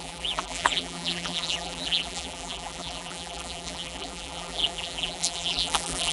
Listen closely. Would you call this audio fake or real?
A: fake